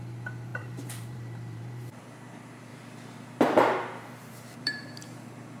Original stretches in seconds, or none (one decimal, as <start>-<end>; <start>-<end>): 0.0-0.5; 2.0-2.7